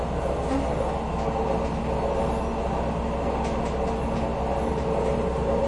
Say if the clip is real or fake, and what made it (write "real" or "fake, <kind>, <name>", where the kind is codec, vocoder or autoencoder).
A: real